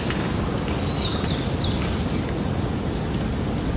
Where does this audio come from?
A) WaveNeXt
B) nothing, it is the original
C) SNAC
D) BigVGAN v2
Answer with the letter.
B